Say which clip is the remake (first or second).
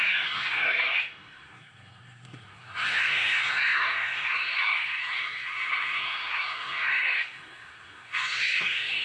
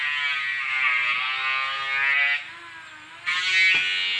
first